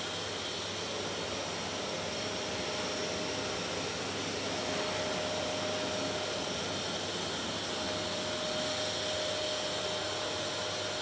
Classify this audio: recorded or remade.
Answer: recorded